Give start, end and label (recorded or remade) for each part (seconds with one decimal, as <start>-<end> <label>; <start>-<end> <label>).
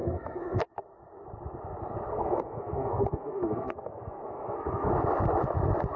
0.0-0.6 remade; 0.6-2.1 recorded; 2.1-4.9 remade; 4.9-6.0 recorded